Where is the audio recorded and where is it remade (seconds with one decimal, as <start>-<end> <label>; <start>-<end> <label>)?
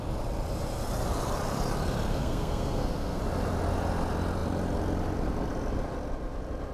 0.0-2.1 recorded; 2.1-3.2 remade; 3.2-6.7 recorded